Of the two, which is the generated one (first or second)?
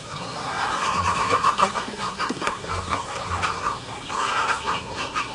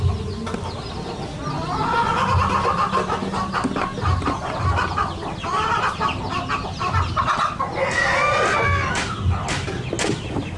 first